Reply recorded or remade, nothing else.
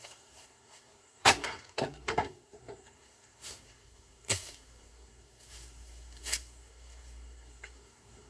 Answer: remade